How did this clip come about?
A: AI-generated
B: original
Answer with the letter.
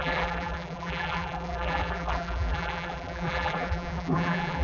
A